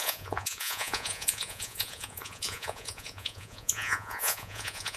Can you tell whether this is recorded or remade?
remade